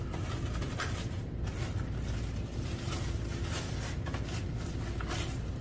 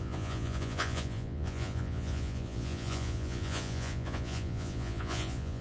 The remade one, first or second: second